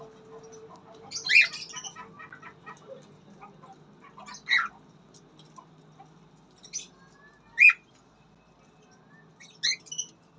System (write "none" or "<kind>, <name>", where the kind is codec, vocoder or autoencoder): none